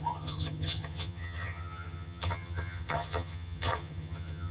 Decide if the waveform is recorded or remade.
remade